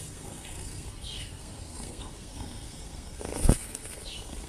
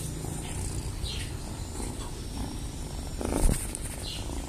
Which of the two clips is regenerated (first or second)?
first